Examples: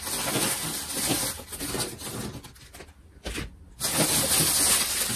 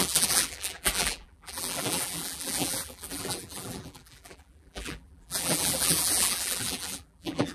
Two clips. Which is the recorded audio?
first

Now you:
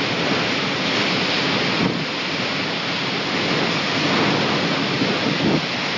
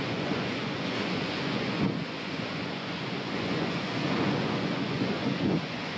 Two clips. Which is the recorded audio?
first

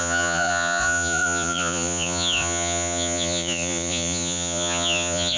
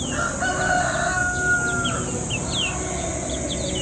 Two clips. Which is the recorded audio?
second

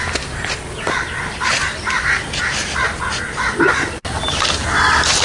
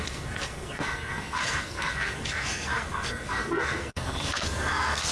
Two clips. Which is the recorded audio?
first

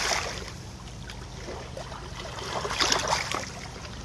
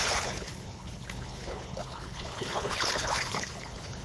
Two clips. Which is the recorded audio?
first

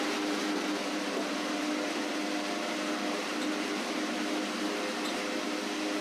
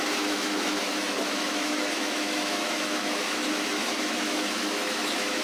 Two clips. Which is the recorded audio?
first